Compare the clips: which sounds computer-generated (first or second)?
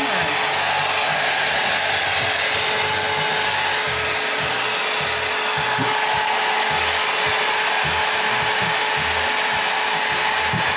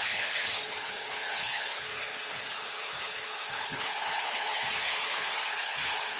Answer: second